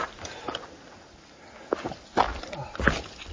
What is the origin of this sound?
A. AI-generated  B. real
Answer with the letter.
B